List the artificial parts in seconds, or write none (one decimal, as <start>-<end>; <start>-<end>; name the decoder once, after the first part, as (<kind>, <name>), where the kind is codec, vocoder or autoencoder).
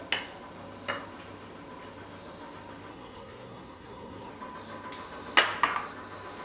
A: 2.9-4.3 (codec, SNAC)